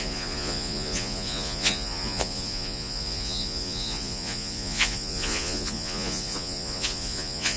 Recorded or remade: remade